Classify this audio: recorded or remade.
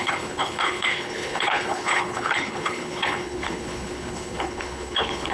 remade